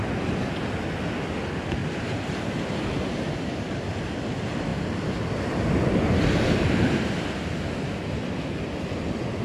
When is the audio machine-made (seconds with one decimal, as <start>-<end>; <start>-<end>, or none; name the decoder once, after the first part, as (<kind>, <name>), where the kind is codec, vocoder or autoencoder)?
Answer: 1.8-2.3 (vocoder, BigVGAN v2)